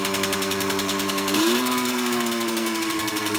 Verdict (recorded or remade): remade